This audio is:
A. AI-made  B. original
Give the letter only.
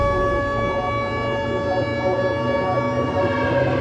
B